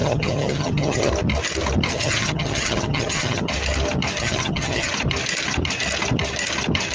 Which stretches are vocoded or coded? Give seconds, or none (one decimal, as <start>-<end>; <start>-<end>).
0.0-1.1; 1.9-3.5; 4.2-4.9